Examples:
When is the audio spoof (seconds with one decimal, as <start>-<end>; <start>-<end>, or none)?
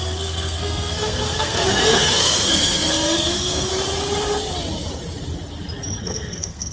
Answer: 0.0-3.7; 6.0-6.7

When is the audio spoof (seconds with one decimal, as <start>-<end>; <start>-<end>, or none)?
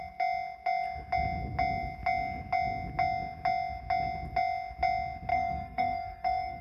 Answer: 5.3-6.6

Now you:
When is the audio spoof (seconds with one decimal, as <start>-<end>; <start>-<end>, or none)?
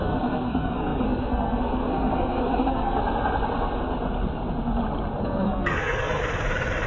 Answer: 0.0-3.0; 5.2-6.2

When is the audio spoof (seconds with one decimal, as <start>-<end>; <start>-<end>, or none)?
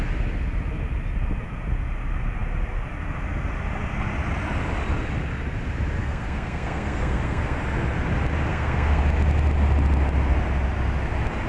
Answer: 6.0-7.6; 8.5-9.0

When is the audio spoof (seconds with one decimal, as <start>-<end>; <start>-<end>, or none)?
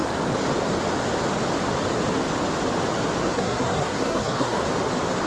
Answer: 3.2-4.6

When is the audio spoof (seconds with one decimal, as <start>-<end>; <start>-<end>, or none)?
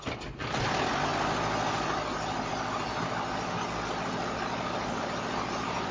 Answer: none